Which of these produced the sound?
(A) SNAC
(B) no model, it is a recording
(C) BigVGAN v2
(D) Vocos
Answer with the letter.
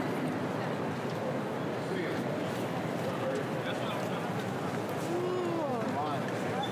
B